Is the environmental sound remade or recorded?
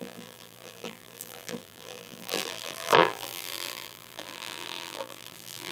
remade